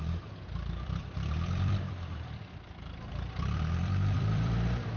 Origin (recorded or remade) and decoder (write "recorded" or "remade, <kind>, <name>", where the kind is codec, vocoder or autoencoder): remade, vocoder, BigVGAN v2